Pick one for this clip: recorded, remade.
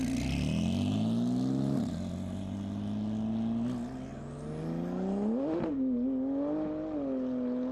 recorded